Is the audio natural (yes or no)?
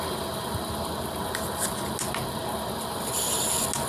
yes